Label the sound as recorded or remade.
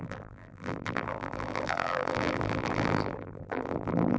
remade